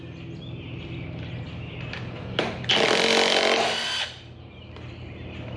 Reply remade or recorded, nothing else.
recorded